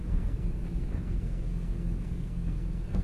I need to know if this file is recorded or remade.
remade